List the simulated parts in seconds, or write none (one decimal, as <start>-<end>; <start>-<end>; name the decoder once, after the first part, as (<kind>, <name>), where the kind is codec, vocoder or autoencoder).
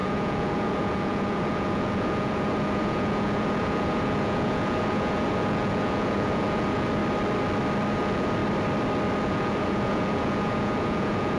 0.0-7.0 (vocoder, Vocos); 7.9-8.4; 9.2-11.4